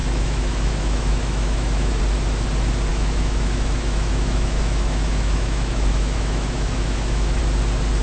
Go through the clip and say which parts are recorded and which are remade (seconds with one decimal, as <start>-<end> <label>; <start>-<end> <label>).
0.0-2.0 remade; 2.0-2.9 recorded; 2.9-7.4 remade; 7.4-8.0 recorded